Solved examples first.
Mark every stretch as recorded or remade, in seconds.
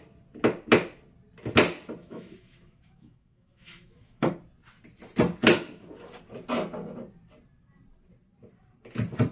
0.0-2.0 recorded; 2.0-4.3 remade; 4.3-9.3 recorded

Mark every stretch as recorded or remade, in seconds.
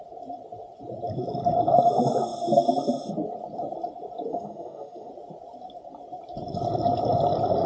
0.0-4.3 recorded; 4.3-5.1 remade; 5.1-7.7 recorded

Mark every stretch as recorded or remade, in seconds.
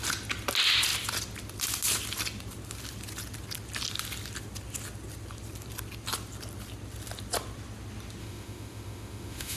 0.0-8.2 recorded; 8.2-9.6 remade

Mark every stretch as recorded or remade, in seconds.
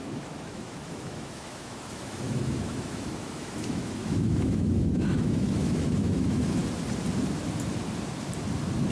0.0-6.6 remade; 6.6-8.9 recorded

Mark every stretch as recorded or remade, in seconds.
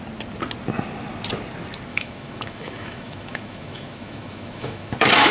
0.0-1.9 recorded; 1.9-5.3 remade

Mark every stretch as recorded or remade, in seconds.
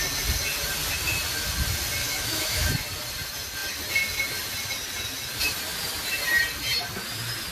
0.0-2.0 recorded; 2.0-2.7 remade; 2.7-7.5 recorded